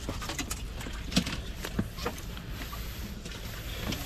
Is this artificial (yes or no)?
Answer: no